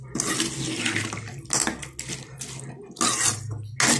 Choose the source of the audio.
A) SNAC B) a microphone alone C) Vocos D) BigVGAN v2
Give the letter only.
B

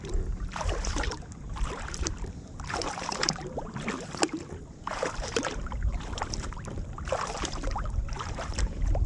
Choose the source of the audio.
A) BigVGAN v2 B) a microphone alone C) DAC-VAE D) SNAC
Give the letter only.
A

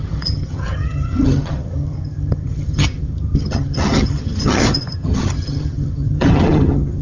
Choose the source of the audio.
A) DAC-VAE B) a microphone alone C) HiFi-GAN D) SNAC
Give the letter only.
C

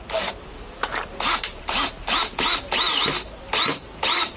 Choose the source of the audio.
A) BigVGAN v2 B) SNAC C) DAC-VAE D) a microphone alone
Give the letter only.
A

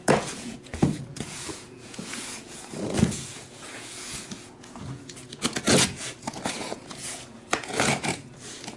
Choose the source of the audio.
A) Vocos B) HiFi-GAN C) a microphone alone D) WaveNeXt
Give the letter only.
A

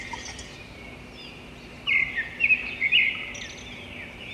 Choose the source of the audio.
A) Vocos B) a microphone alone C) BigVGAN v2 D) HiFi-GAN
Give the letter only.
B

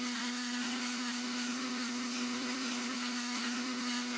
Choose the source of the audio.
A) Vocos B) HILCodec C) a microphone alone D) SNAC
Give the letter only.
D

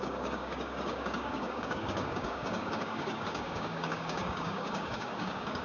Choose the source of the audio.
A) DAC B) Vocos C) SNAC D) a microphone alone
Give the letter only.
A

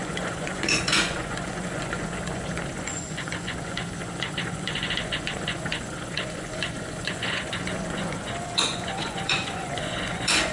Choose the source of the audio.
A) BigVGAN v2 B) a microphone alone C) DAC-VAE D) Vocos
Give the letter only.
D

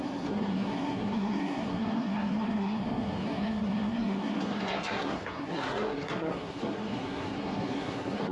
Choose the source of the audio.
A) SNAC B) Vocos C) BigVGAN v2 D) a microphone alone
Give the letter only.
A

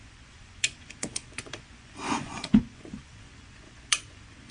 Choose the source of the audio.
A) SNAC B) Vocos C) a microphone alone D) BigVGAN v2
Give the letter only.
B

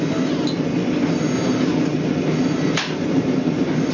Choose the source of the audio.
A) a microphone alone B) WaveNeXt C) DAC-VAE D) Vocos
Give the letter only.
A